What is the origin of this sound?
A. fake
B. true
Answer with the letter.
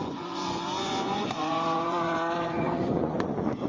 A